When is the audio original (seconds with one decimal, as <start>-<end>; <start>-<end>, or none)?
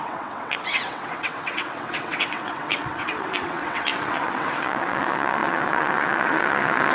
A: none